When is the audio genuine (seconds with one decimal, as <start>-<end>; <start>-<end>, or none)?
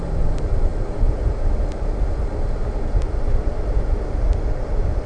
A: 0.0-5.1